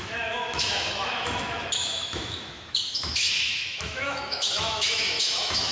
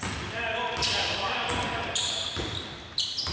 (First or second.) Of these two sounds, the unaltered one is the second